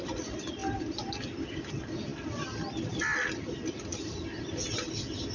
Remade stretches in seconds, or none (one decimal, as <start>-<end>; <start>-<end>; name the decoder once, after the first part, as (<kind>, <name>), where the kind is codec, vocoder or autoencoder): 0.6-1.3 (vocoder, BigVGAN v2)

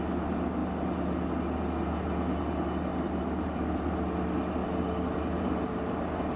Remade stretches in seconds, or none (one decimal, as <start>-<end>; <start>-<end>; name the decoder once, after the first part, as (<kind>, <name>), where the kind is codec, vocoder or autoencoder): 2.9-3.9 (vocoder, BigVGAN v2); 4.6-6.4

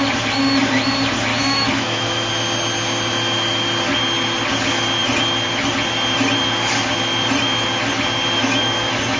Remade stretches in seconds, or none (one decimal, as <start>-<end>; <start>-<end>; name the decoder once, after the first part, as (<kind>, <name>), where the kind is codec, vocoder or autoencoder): 1.3-2.3 (autoencoder, DAC-VAE); 8.4-9.2

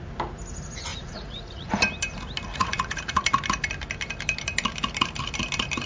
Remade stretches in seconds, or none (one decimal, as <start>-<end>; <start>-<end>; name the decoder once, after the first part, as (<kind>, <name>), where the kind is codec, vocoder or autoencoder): 0.9-1.7 (vocoder, Vocos); 2.5-3.2

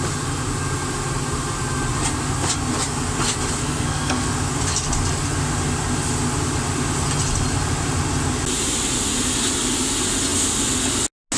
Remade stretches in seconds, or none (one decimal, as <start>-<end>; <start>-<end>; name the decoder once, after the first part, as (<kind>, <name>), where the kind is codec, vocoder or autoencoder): 3.6-4.3 (codec, SNAC)

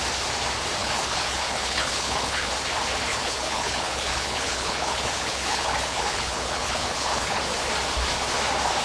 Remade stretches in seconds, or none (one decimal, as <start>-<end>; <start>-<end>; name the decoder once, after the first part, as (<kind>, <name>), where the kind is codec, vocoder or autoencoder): 0.8-2.5 (codec, HILCodec); 3.1-7.4